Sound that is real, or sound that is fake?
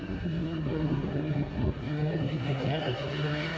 fake